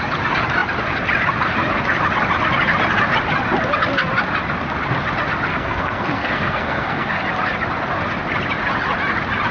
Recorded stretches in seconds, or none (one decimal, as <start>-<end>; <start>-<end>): 0.0-5.5; 7.2-9.5